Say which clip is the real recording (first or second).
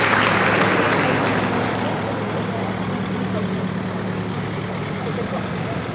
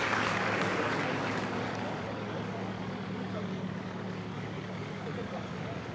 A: first